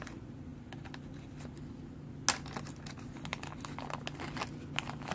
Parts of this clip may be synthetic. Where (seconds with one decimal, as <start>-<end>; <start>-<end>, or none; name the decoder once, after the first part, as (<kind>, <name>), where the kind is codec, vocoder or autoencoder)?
none